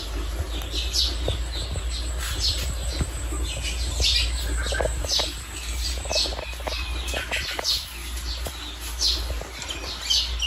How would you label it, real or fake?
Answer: real